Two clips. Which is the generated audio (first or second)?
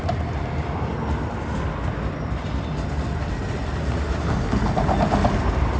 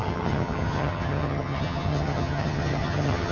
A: second